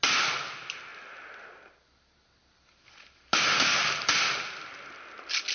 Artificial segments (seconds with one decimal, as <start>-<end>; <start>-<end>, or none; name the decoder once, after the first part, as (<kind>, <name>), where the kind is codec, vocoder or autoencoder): none